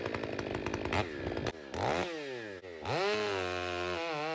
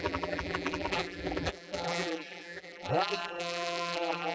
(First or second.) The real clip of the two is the first